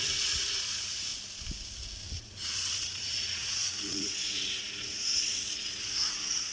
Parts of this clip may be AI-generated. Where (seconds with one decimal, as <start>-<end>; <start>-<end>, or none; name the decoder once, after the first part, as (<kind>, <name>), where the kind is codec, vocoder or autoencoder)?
0.0-1.1 (vocoder, Vocos); 2.1-6.5